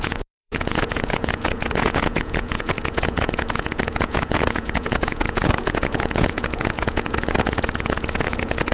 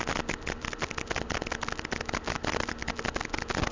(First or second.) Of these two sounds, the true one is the second